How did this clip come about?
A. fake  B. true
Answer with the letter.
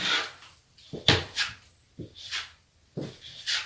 B